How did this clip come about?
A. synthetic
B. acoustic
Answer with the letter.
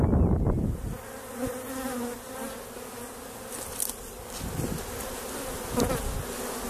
B